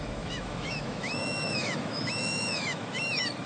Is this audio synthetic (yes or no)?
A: yes